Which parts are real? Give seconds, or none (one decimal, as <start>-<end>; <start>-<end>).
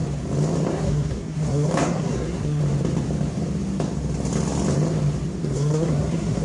0.0-0.7; 2.6-5.4